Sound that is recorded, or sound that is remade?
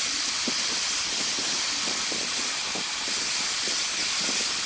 recorded